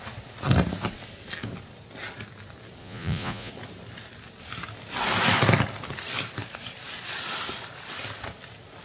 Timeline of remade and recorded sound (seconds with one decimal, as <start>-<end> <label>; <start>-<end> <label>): 0.0-2.8 recorded; 2.8-3.5 remade; 3.5-8.8 recorded